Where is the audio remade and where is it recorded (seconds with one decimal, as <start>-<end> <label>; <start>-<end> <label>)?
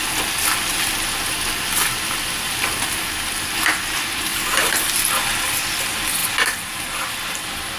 0.0-7.8 recorded